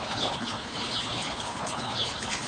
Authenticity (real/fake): fake